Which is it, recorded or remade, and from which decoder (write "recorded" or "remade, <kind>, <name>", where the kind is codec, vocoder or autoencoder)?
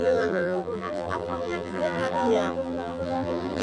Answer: remade, vocoder, BigVGAN v2